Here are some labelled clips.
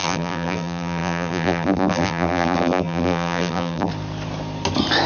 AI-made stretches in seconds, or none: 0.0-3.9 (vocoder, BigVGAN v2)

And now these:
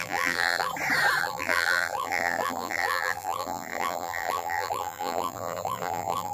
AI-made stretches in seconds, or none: 0.0-0.7 (vocoder, BigVGAN v2); 1.2-6.3

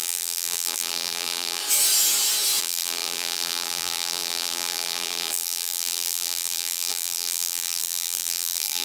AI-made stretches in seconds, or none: 0.0-1.6 (vocoder, BigVGAN v2); 2.6-8.8

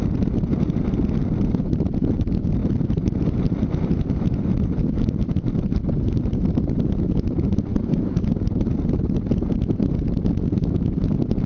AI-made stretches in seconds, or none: none

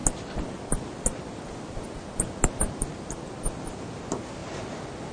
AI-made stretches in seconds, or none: none

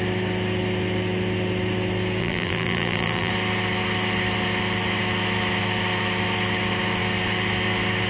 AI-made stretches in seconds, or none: 2.2-3.3 (vocoder, BigVGAN v2)

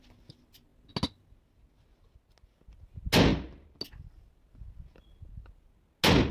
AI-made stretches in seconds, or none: none